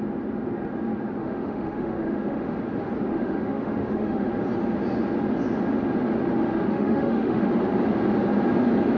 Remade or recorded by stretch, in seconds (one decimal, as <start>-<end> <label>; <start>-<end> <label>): 0.0-1.2 recorded; 1.2-2.6 remade; 2.6-3.1 recorded; 3.1-4.3 remade; 4.3-6.4 recorded; 6.4-7.4 remade; 7.4-9.0 recorded